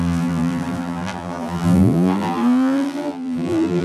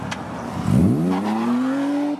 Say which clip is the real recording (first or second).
second